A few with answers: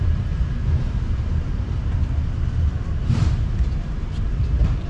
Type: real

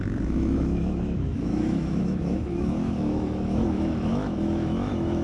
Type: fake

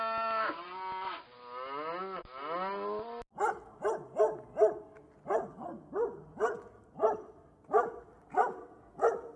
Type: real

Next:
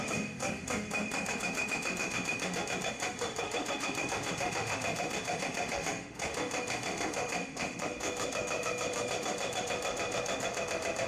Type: fake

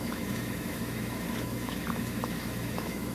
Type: fake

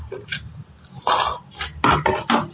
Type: real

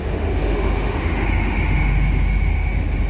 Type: fake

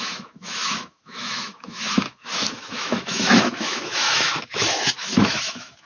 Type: fake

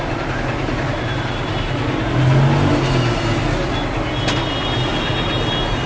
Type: real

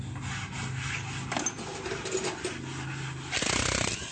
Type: real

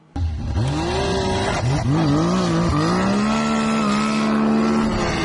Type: real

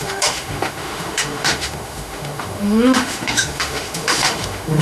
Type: fake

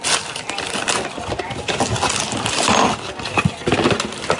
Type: real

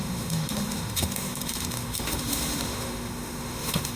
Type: fake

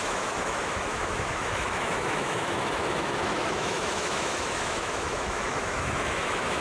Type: fake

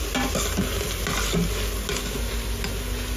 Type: real